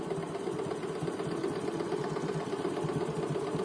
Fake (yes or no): yes